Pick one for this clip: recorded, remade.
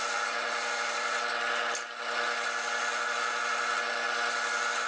recorded